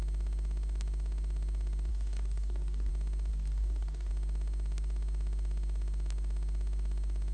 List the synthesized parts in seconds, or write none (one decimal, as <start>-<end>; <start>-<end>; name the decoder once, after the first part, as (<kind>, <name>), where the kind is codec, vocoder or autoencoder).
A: 1.9-2.9 (codec, DAC); 3.3-4.1